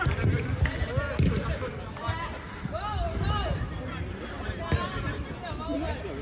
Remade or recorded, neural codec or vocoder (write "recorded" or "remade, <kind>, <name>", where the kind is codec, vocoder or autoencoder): recorded